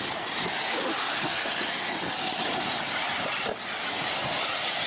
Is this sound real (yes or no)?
yes